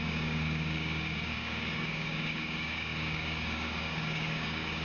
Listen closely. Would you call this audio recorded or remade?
remade